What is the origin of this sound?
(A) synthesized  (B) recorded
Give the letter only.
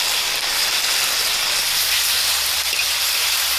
B